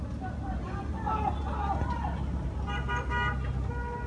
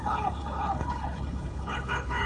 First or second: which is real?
first